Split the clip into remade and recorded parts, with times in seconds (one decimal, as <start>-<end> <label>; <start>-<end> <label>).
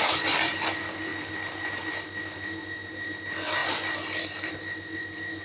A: 0.0-5.4 recorded